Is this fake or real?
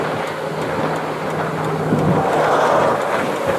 real